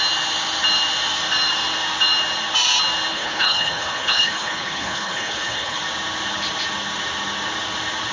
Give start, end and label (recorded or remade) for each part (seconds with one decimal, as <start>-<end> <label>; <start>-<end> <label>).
0.0-3.1 recorded; 3.1-5.8 remade; 5.8-8.1 recorded